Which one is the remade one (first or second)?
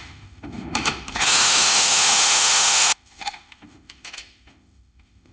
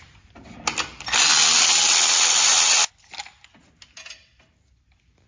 first